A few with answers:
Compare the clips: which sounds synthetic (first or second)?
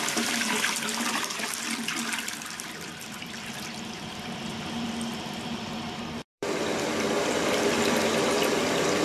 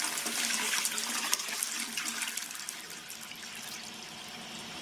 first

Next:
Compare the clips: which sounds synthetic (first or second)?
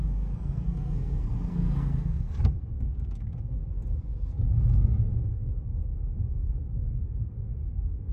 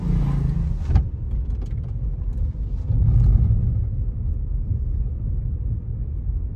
first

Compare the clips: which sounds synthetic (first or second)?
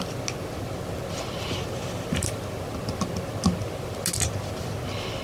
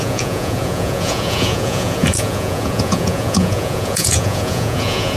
second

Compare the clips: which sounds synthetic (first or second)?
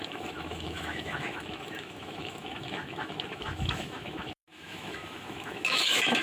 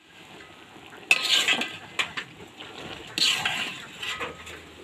first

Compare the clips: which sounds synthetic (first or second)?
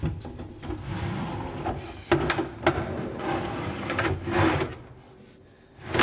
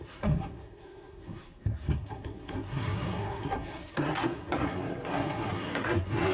second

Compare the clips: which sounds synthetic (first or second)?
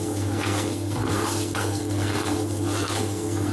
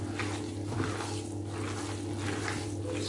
first